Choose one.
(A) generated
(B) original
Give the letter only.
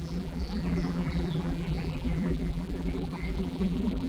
A